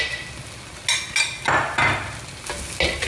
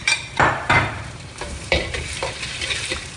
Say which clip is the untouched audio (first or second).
first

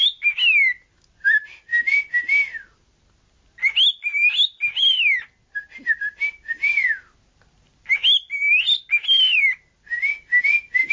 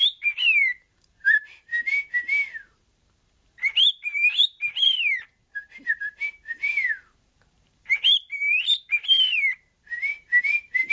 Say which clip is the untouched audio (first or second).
first